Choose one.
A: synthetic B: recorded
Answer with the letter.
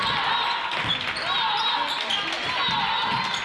B